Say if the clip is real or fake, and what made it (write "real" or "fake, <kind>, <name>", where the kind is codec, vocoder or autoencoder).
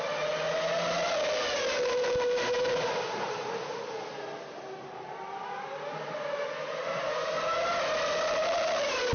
real